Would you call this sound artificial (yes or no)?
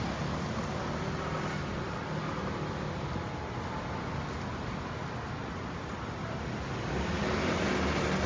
no